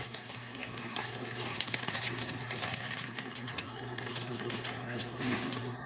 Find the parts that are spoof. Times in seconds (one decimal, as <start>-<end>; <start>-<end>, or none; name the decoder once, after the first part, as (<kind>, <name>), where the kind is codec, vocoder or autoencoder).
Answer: 0.0-5.9 (codec, SNAC)